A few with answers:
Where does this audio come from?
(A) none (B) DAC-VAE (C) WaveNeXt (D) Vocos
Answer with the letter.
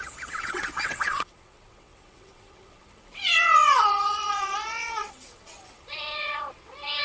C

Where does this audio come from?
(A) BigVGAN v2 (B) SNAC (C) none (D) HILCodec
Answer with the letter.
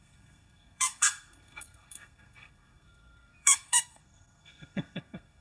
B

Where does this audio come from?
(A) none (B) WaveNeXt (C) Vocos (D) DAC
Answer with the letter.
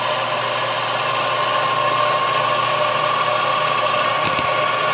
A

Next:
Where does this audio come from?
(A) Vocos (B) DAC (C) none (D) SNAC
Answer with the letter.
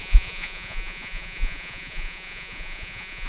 A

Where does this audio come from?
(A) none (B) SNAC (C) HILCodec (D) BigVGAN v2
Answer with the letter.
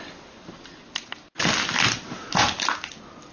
A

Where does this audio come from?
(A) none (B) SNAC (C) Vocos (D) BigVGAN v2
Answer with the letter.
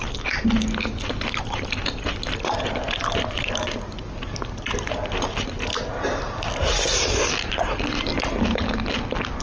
A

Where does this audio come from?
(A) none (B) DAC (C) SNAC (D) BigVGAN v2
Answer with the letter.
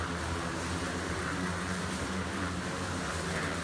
D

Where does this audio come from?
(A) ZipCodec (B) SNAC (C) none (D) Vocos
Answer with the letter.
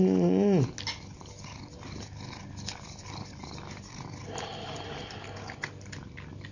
C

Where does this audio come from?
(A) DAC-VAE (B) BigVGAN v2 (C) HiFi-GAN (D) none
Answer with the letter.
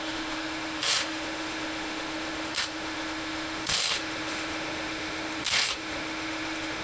A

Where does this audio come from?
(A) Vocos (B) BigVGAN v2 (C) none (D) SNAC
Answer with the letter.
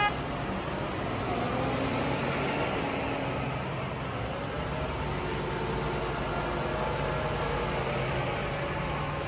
C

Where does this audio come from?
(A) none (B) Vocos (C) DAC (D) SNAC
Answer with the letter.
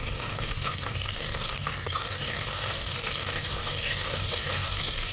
C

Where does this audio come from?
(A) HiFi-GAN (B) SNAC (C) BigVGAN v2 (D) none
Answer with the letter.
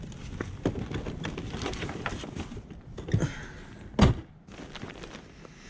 D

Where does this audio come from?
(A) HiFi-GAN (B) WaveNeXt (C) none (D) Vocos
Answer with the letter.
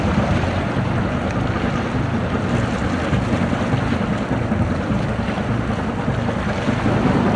C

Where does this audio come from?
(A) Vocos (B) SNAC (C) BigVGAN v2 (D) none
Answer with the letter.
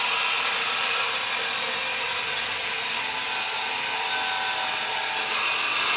D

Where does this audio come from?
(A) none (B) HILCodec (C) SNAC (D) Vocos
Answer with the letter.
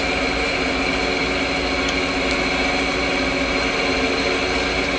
A